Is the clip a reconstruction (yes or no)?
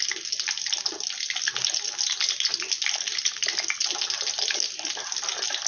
no